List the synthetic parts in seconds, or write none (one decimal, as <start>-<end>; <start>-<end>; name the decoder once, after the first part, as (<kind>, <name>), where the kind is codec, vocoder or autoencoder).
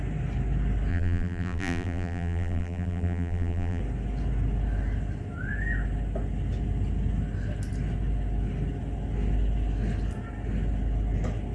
0.9-3.8 (vocoder, BigVGAN v2)